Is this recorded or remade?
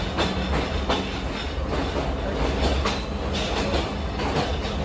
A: recorded